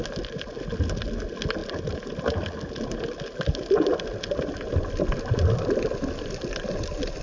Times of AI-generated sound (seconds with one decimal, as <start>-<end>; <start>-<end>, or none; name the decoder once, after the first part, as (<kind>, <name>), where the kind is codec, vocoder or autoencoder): none